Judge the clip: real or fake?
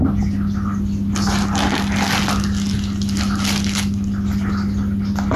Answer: real